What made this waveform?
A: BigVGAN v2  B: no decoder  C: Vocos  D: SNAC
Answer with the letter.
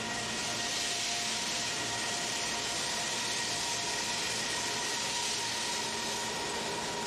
B